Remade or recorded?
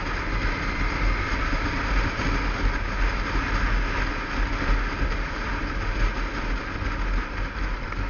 recorded